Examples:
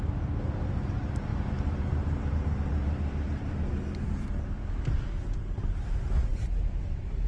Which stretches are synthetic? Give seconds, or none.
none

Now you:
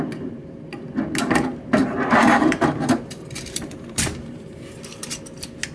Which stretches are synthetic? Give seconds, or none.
1.8-5.2 (vocoder, BigVGAN v2)

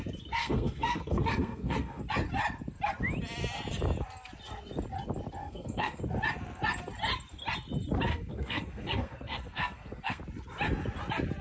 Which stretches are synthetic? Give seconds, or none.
0.4-2.0 (codec, SNAC); 5.4-6.0; 8.1-10.2

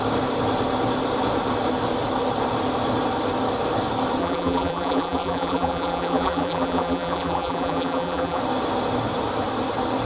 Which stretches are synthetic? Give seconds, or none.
4.2-8.4 (vocoder, BigVGAN v2)